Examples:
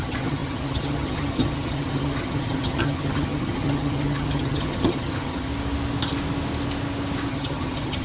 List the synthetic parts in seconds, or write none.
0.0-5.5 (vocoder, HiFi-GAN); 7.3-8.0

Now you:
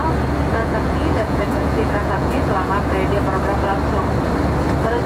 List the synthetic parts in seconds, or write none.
0.5-2.8 (vocoder, Vocos)

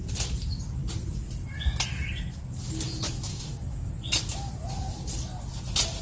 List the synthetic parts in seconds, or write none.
3.3-3.9 (autoencoder, DAC-VAE)

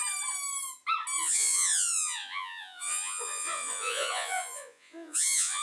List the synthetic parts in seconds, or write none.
1.2-5.6 (vocoder, Vocos)

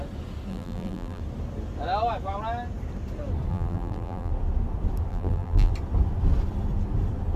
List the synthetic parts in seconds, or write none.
0.5-1.2 (vocoder, BigVGAN v2); 3.5-4.3; 5.1-5.7

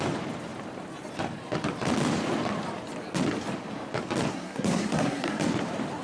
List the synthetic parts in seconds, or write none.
4.3-5.4 (codec, SNAC)